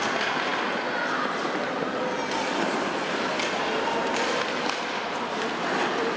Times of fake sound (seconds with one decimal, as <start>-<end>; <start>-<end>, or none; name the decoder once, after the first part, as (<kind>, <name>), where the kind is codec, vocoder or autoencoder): none